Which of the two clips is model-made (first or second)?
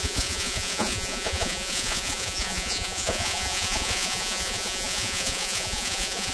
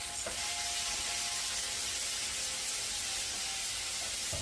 first